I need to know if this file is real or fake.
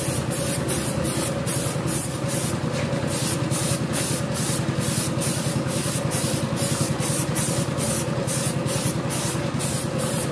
real